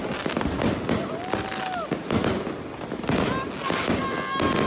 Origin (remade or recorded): recorded